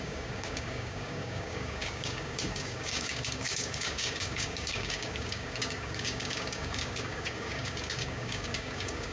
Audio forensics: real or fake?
fake